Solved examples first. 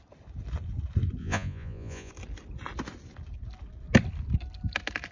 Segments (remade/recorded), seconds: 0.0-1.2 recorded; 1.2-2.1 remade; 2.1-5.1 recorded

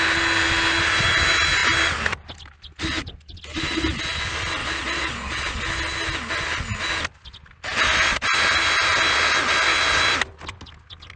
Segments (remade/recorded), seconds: 0.0-4.6 recorded; 4.6-5.5 remade; 5.5-11.2 recorded

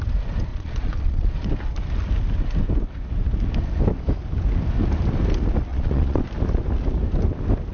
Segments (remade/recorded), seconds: 0.0-0.5 recorded; 0.5-1.5 remade; 1.5-5.7 recorded; 5.7-6.2 remade; 6.2-7.7 recorded

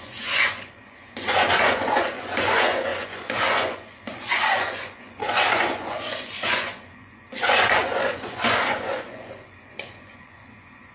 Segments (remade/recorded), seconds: 0.0-10.9 remade

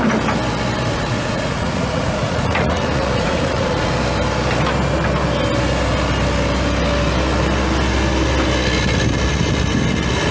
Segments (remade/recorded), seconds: 0.0-0.9 recorded; 0.9-3.9 remade; 3.9-10.3 recorded

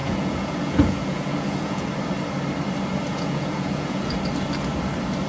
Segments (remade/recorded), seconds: 0.0-1.9 remade; 1.9-3.1 recorded; 3.1-4.1 remade; 4.1-5.3 recorded

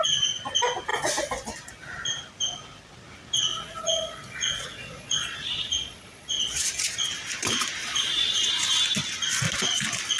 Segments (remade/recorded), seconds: 0.0-3.5 recorded; 3.5-6.6 remade; 6.6-7.8 recorded; 7.8-8.5 remade; 8.5-10.2 recorded

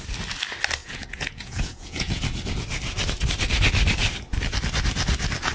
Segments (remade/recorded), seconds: 0.0-0.8 recorded; 0.8-2.2 remade; 2.2-5.5 recorded